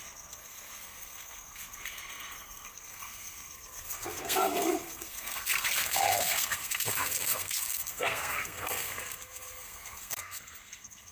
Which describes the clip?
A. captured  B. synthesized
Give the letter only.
B